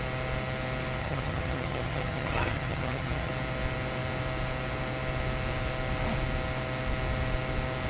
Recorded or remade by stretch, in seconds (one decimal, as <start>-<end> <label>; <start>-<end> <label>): 0.0-1.0 recorded; 1.0-3.3 remade; 3.3-7.9 recorded